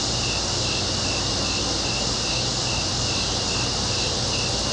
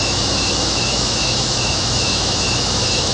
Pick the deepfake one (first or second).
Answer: second